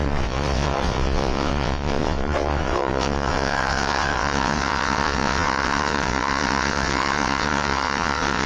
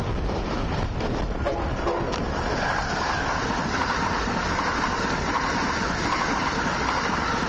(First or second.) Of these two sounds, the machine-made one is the first